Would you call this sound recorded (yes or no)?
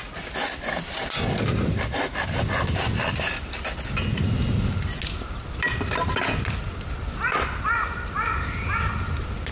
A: yes